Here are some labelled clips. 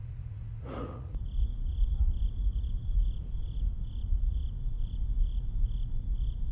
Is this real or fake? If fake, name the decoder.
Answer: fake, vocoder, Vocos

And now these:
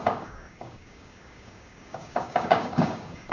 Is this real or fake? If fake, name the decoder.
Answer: fake, codec, DAC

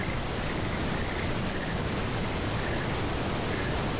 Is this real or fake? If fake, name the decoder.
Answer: real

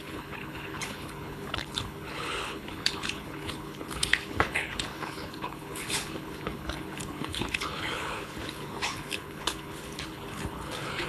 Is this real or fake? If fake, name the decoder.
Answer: fake, codec, HILCodec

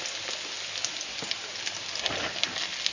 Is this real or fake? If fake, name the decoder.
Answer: real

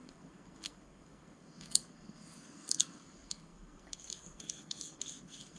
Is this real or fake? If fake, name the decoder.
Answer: fake, codec, SNAC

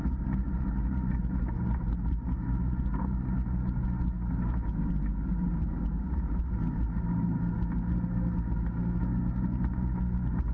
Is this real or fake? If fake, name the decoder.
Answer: real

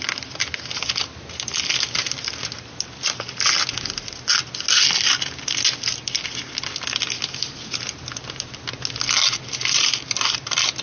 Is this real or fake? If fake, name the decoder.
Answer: real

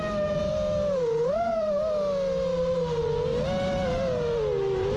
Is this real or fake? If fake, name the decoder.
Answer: real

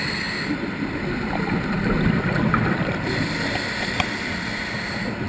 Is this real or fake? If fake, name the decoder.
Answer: real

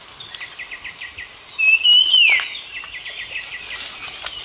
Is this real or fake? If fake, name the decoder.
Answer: real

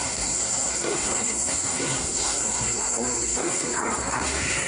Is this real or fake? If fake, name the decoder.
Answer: fake, codec, SNAC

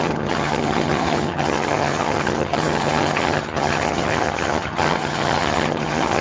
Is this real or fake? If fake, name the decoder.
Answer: fake, vocoder, HiFi-GAN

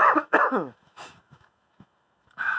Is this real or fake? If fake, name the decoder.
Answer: fake, autoencoder, DAC-VAE